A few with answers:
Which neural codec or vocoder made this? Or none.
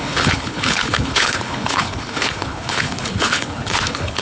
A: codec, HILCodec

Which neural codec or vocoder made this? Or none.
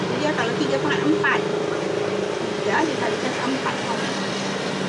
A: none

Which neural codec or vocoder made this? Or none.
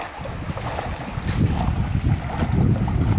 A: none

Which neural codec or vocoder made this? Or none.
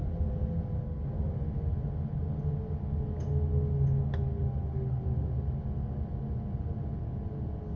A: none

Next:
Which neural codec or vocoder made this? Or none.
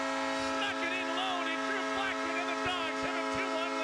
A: none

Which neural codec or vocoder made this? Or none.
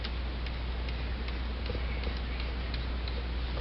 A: none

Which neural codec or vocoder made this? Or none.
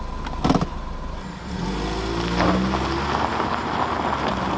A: none